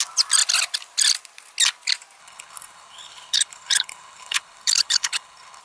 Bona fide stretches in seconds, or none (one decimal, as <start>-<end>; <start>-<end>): 0.0-2.2